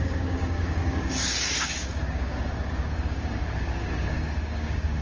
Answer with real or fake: fake